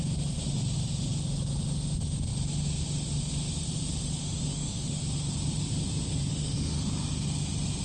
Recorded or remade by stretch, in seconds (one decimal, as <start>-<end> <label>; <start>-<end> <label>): 0.0-4.2 recorded; 4.2-5.0 remade; 5.0-6.3 recorded; 6.3-6.9 remade; 6.9-7.8 recorded